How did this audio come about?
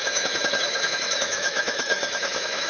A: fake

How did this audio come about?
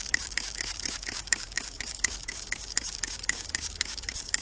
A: fake